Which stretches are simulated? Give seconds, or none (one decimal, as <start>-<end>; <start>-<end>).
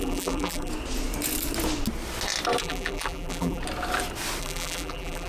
0.0-0.7; 2.6-3.6; 4.4-5.3